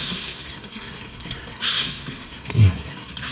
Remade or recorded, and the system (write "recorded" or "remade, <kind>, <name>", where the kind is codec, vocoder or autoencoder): remade, codec, SNAC